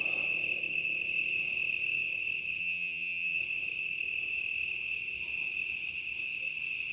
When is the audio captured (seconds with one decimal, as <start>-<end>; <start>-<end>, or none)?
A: 0.0-2.6; 3.4-6.9